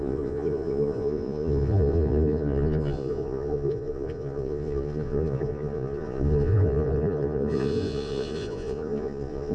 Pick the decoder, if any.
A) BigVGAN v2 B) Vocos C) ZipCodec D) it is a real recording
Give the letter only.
B